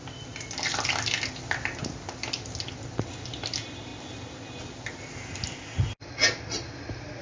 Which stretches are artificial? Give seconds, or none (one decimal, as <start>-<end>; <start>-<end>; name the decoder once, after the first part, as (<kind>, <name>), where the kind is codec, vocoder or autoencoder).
none

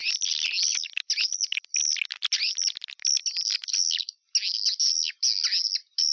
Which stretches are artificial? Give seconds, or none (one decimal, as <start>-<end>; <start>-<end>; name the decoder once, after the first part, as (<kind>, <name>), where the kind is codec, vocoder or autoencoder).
none

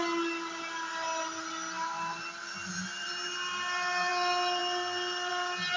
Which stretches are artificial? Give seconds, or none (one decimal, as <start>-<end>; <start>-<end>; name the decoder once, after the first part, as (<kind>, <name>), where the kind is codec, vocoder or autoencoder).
none

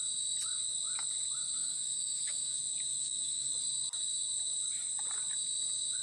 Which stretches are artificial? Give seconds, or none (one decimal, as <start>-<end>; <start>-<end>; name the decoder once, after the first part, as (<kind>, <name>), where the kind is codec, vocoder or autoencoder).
1.6-2.6 (autoencoder, DAC-VAE); 3.0-3.5

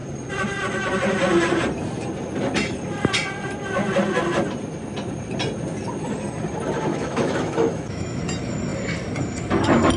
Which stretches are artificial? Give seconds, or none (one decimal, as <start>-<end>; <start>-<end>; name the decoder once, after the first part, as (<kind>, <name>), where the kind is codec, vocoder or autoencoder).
6.9-8.2 (autoencoder, DAC-VAE)

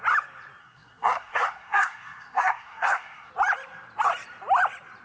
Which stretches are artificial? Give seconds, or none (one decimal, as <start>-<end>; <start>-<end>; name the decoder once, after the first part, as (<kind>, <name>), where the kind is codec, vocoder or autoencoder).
0.6-3.3 (codec, SNAC)